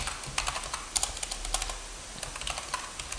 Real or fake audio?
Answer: real